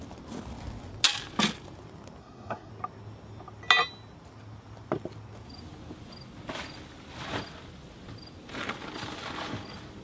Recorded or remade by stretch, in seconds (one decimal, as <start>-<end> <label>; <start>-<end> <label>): 0.0-2.2 recorded; 2.2-2.7 remade; 2.7-10.0 recorded